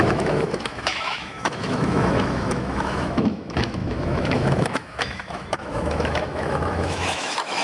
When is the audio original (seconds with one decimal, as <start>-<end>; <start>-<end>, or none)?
none